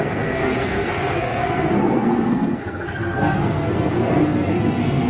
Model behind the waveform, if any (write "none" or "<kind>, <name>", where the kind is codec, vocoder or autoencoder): codec, SNAC